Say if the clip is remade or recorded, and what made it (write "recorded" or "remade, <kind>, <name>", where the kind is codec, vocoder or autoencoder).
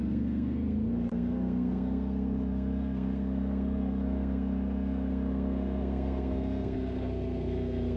remade, codec, SNAC